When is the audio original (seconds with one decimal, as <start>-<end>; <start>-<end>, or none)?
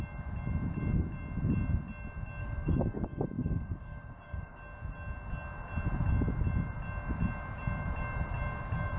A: 0.0-2.4; 4.6-9.0